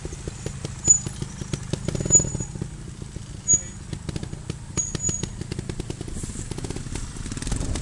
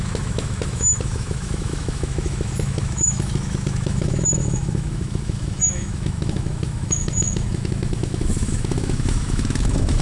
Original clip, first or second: first